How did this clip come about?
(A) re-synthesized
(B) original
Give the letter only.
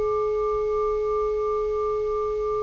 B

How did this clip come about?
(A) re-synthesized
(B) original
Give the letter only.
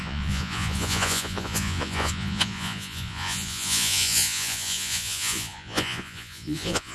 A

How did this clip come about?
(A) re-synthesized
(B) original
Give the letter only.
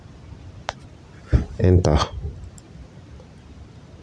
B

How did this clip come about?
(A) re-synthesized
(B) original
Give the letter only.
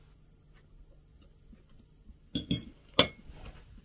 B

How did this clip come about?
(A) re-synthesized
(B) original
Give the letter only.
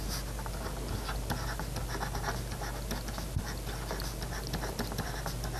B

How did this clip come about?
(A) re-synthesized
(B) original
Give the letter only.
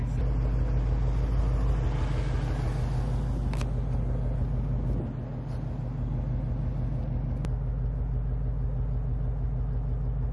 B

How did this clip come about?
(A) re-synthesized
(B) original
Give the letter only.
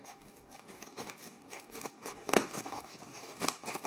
A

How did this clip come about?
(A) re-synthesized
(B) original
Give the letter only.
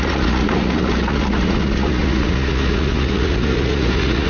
A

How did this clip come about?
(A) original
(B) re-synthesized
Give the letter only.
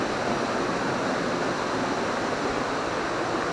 A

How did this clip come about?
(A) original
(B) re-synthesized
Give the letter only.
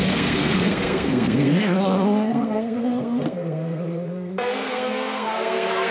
B